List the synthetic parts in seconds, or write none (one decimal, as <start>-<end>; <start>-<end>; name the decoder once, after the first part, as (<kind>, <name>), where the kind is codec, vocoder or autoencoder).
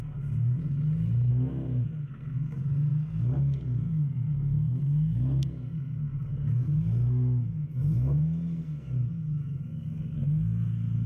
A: 0.0-0.6 (codec, SNAC); 1.3-11.1